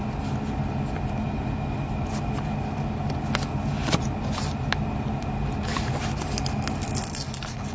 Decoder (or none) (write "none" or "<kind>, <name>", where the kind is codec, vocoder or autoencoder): none